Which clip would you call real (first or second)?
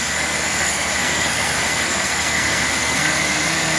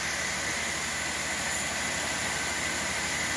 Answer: second